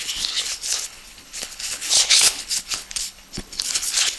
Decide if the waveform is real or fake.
fake